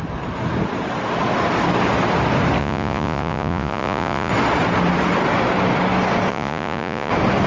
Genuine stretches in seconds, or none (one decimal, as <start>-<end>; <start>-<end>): 0.0-2.6; 4.3-6.3; 7.1-7.5